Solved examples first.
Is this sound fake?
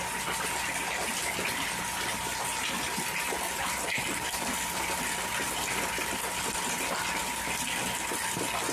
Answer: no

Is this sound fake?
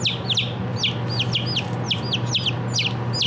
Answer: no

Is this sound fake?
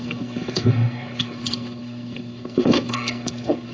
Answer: yes